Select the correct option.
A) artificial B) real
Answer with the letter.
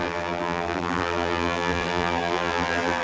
A